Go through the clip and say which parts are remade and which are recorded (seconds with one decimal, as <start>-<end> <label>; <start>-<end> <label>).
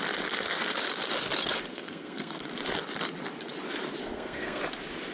0.0-1.7 recorded; 1.7-2.4 remade; 2.4-4.0 recorded; 4.0-4.6 remade; 4.6-5.1 recorded